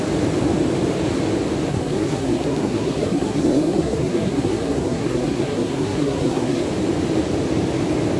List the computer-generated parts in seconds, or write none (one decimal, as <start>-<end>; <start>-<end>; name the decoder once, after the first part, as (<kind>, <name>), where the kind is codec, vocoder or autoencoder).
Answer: 1.7-6.6 (codec, SNAC)